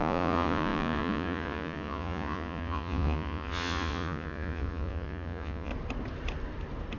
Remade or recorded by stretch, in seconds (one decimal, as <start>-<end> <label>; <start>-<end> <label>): 0.0-5.7 remade; 5.7-7.0 recorded